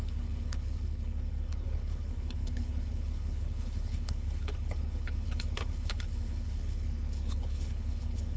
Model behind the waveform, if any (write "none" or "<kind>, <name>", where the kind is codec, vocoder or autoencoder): codec, HILCodec